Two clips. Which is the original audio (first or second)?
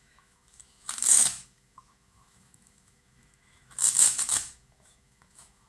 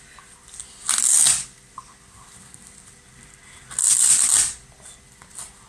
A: second